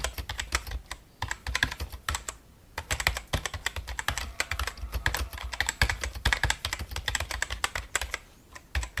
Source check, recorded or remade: recorded